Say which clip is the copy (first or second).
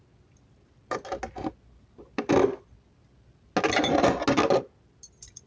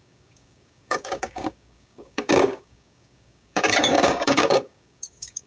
second